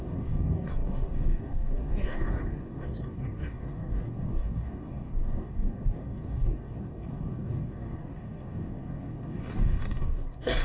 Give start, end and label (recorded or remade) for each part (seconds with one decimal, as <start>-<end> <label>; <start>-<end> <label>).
0.0-10.6 remade